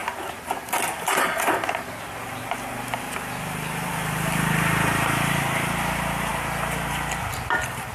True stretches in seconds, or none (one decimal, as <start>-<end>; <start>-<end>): 0.0-7.9